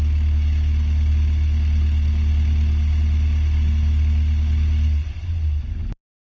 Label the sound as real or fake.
real